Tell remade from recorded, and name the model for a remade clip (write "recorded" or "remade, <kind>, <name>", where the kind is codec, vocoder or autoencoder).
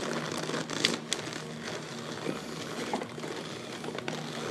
recorded